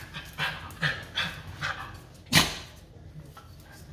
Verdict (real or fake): real